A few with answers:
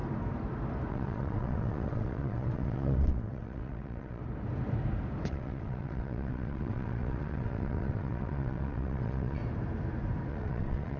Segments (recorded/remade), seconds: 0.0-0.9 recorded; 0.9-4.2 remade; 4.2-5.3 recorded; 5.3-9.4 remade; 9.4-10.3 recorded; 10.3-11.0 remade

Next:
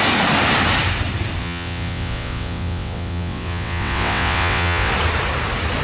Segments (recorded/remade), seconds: 0.0-1.4 recorded; 1.4-4.9 remade; 4.9-5.8 recorded

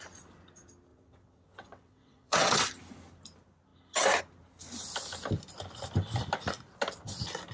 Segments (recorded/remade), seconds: 0.0-0.9 recorded; 0.9-2.7 remade; 2.7-7.5 recorded